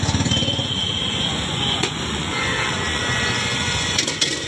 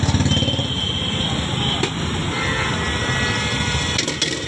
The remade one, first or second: first